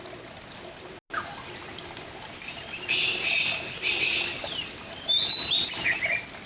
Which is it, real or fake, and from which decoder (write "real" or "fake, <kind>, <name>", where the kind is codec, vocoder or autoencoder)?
real